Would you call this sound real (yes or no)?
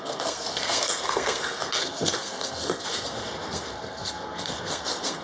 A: no